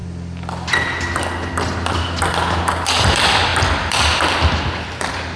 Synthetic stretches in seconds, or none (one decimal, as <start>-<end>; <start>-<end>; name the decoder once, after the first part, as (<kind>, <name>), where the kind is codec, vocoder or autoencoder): none